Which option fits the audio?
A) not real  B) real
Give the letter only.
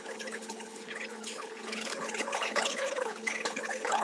A